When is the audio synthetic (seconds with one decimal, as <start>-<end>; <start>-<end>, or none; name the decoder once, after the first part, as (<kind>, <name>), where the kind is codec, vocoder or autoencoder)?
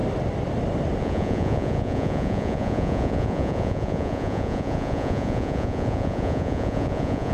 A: 1.0-7.3 (vocoder, Vocos)